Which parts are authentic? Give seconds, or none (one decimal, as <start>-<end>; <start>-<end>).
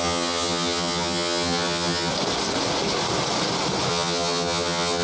2.1-3.9